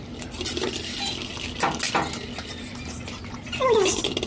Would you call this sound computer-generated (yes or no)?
no